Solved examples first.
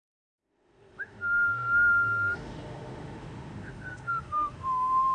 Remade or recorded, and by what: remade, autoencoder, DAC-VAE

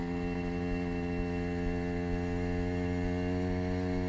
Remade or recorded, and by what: recorded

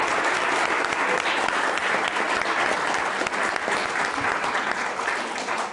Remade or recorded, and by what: recorded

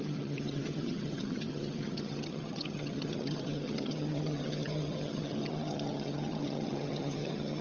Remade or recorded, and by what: remade, vocoder, HiFi-GAN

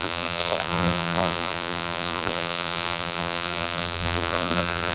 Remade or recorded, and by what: remade, vocoder, BigVGAN v2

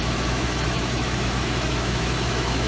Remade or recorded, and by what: remade, autoencoder, DAC-VAE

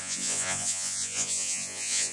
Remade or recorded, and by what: remade, vocoder, Vocos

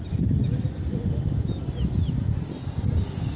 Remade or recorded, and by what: recorded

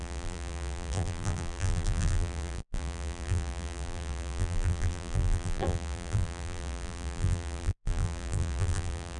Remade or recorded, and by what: remade, vocoder, BigVGAN v2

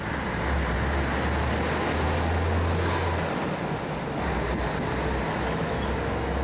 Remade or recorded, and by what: recorded